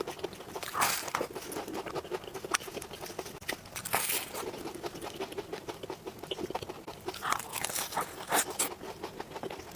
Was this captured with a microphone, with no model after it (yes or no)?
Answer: yes